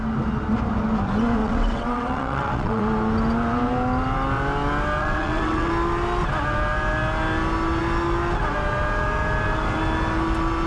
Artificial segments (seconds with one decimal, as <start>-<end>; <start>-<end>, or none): 1.4-2.8; 5.0-5.7